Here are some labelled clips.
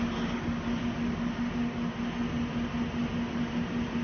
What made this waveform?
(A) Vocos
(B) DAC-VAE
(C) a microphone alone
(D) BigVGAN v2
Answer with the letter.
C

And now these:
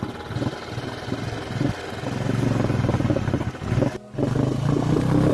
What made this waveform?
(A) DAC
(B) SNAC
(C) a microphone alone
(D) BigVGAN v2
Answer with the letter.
C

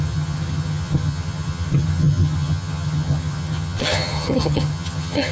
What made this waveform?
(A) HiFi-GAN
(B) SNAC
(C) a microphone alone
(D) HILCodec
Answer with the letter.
A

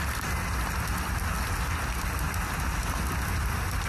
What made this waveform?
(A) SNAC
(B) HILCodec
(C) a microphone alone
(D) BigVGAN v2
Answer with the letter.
C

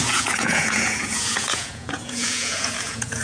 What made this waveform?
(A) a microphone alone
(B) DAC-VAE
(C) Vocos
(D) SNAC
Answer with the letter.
C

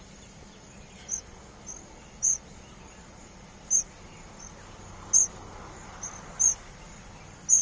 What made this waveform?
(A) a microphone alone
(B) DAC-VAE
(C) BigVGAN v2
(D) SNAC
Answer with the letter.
A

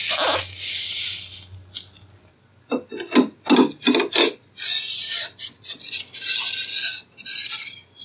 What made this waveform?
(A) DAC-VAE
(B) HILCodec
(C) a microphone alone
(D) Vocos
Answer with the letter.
C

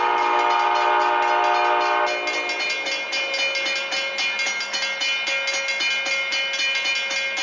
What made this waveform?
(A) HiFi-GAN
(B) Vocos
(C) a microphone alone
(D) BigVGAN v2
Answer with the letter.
C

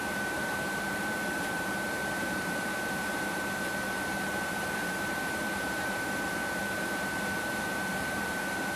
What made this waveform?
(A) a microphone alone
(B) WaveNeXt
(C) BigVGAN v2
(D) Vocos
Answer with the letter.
C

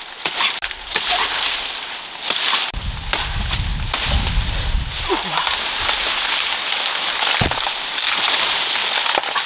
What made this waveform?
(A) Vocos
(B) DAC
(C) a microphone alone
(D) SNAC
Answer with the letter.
C